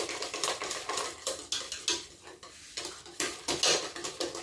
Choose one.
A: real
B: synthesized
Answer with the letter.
A